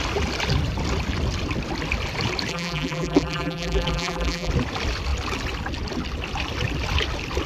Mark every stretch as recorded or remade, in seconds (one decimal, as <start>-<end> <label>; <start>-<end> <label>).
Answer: 0.0-2.5 recorded; 2.5-4.5 remade; 4.5-7.5 recorded